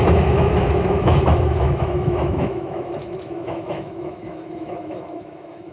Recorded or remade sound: remade